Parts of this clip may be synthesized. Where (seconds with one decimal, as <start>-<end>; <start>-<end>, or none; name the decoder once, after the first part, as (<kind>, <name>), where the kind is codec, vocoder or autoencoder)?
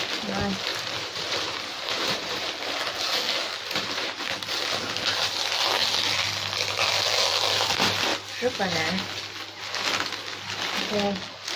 0.7-2.5 (vocoder, BigVGAN v2); 3.4-4.2